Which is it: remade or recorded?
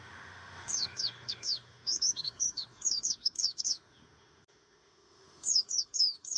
remade